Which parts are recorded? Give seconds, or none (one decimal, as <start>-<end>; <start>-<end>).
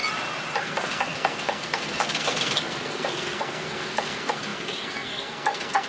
0.0-0.6